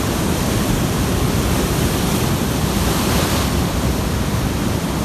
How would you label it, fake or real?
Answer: real